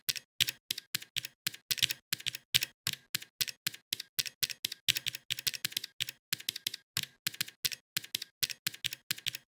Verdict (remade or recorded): recorded